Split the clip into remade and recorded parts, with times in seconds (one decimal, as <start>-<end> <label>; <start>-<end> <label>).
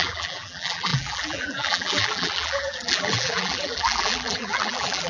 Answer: 0.0-5.1 remade